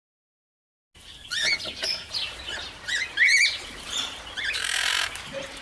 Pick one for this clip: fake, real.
real